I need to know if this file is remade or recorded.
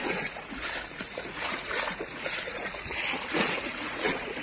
remade